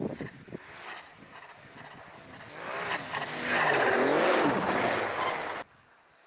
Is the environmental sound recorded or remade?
recorded